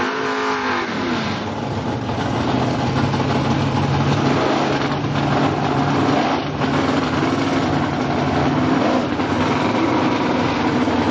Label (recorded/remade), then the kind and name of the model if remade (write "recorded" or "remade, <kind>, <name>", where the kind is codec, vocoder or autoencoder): recorded